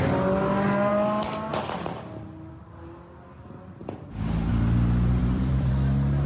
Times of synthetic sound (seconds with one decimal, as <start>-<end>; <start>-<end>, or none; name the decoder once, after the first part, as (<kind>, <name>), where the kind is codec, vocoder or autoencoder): 5.2-5.7 (vocoder, BigVGAN v2)